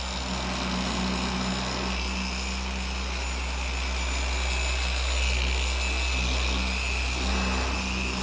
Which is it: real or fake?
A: real